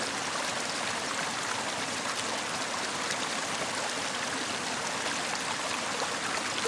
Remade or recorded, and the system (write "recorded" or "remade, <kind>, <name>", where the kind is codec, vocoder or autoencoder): recorded